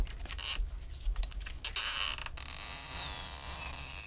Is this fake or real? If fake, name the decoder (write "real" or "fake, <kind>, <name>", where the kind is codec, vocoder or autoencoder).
real